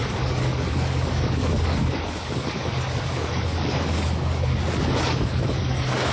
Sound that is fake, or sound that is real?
fake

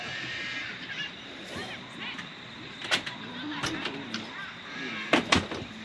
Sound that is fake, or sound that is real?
fake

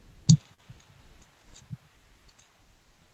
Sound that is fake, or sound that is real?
real